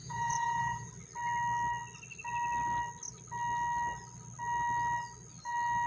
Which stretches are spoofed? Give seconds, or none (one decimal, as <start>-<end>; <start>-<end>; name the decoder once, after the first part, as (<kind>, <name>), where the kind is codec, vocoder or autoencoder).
0.0-0.9 (vocoder, Vocos)